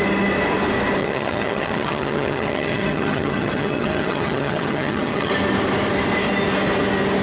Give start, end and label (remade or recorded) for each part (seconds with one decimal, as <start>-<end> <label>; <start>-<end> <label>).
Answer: 0.0-1.0 recorded; 1.0-5.3 remade; 5.3-7.2 recorded